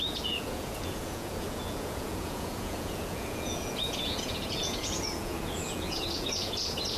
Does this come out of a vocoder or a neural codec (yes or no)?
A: yes